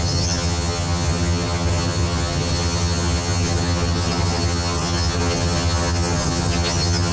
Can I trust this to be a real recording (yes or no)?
no